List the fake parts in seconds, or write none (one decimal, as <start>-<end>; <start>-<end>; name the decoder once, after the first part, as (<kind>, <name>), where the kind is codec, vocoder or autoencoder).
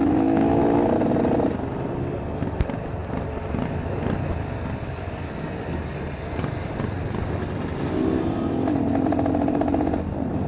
0.0-0.6 (autoencoder, DAC-VAE)